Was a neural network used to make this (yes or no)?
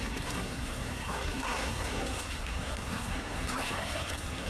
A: yes